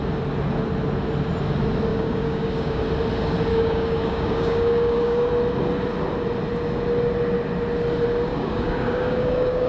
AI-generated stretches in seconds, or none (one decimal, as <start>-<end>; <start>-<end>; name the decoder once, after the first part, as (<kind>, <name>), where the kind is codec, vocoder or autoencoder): 1.9-2.8 (codec, DAC); 3.5-5.3; 8.3-9.7